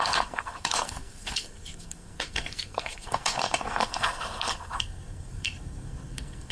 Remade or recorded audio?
remade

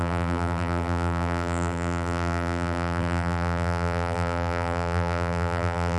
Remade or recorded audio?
remade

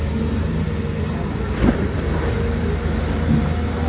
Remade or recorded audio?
recorded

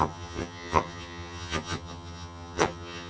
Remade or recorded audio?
remade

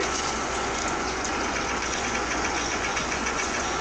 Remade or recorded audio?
remade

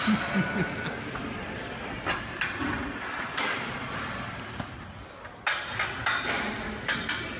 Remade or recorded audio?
recorded